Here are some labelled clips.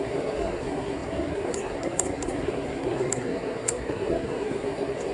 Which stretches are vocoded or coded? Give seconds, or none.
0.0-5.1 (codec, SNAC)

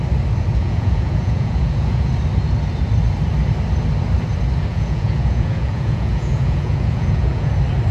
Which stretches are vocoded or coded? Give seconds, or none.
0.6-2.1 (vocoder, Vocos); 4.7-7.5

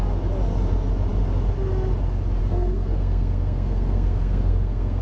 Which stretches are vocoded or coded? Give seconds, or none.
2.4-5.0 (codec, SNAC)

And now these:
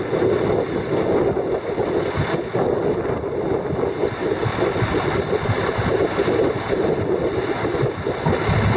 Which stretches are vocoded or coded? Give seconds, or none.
4.5-7.4 (vocoder, BigVGAN v2)